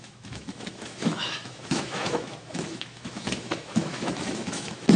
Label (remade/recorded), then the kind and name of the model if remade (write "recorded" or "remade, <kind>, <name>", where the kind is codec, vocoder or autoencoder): remade, autoencoder, DAC-VAE